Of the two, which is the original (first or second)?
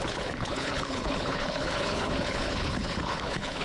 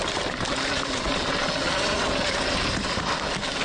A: second